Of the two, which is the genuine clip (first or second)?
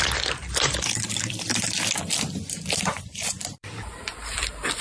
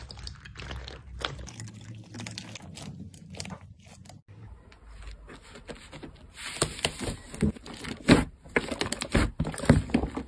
second